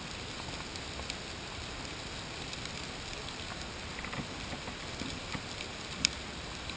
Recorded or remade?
recorded